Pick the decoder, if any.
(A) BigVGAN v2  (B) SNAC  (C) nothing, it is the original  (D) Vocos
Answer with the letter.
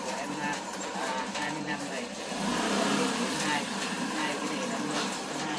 A